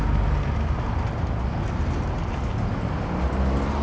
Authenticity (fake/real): real